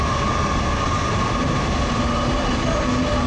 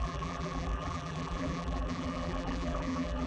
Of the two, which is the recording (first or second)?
first